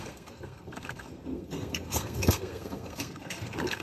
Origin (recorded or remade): remade